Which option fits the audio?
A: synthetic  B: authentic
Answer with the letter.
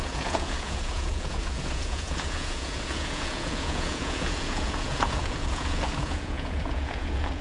A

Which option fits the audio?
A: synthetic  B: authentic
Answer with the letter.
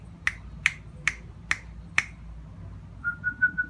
B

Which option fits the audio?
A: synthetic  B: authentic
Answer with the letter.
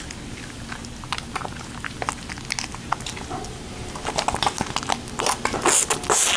B